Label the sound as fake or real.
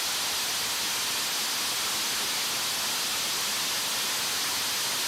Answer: real